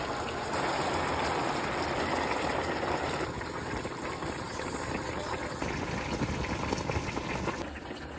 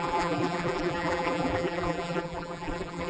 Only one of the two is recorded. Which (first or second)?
first